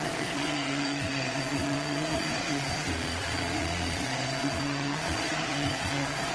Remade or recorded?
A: remade